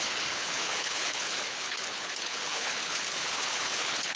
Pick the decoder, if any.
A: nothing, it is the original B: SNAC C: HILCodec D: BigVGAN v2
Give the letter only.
C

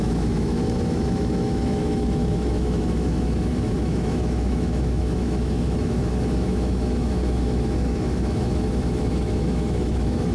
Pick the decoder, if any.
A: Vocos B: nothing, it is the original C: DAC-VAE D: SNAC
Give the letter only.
C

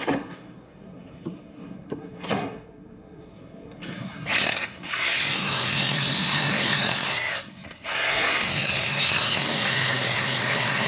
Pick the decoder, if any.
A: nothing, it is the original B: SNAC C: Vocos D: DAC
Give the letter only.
B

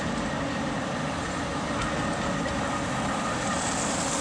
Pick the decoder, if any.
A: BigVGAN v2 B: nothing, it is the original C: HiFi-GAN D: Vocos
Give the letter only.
B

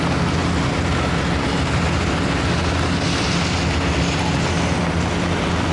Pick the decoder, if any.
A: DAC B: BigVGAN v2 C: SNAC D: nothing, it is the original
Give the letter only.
D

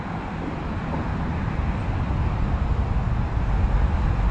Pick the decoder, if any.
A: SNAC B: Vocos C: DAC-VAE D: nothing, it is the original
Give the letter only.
D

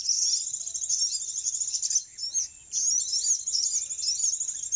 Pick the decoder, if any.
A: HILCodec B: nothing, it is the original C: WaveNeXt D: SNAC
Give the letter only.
B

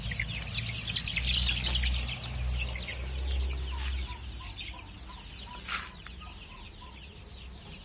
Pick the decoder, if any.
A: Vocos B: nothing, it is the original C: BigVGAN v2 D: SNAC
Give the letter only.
B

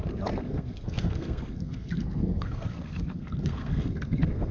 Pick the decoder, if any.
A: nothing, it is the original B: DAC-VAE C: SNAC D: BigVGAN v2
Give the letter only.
C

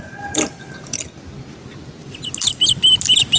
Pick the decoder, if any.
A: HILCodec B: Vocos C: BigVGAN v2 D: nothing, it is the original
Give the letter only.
D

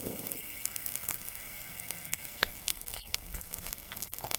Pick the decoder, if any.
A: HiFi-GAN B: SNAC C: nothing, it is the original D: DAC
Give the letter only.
B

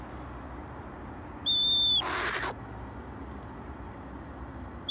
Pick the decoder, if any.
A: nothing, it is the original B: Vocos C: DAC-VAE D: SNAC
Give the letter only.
A